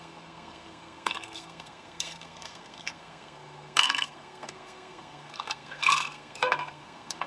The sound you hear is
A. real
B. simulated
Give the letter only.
B